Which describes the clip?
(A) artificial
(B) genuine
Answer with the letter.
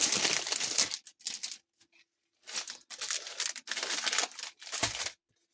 B